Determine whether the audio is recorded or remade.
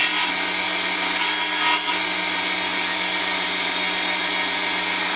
recorded